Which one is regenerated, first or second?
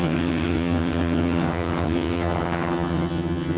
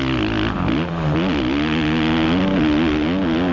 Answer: first